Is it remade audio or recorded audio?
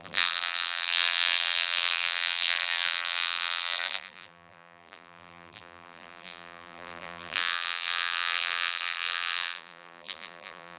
remade